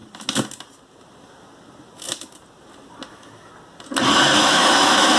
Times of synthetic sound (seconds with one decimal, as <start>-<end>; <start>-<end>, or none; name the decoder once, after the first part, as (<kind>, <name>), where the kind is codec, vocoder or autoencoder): 3.1-3.5 (autoencoder, DAC-VAE); 4.3-5.2